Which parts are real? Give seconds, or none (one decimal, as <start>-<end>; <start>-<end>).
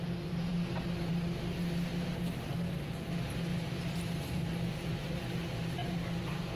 0.0-3.5